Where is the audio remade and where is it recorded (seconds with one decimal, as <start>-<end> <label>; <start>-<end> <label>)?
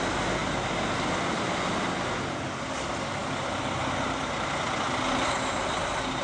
0.0-6.2 recorded